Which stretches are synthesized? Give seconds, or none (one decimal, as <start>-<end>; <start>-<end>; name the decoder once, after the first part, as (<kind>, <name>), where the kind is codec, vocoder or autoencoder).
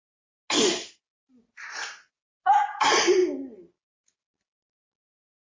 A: none